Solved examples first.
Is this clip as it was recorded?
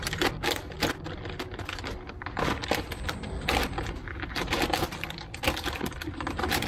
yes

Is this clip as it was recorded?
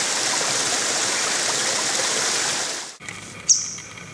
yes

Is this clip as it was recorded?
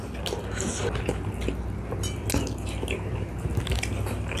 yes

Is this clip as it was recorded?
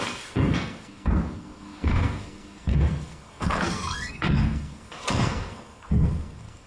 no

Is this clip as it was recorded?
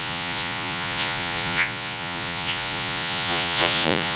no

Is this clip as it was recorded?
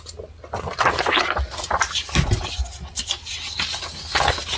yes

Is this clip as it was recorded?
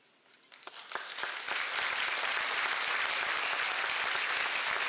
yes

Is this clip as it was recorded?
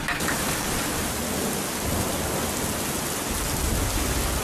yes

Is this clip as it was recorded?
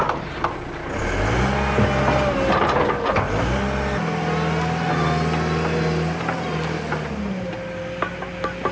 yes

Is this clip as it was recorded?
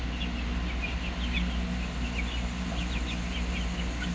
yes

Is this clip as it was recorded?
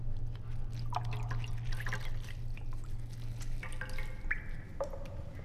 yes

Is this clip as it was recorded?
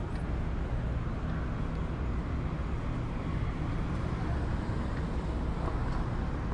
yes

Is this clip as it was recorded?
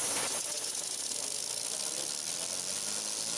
yes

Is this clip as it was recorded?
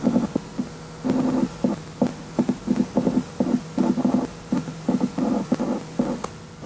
yes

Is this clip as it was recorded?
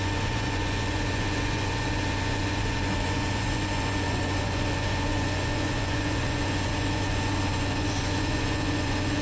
no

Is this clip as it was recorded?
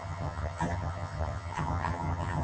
no